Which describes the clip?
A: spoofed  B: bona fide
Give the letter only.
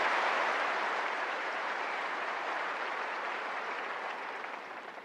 A